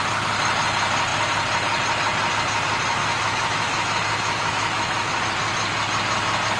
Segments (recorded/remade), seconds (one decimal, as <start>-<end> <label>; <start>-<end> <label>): 0.0-3.0 recorded; 3.0-5.2 remade; 5.2-6.6 recorded